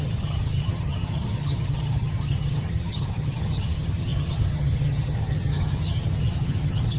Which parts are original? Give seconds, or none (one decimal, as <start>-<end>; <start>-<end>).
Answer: none